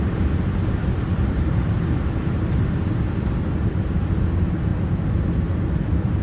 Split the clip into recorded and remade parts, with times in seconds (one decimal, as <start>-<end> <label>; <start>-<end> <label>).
0.0-1.1 recorded; 1.1-2.6 remade; 2.6-6.2 recorded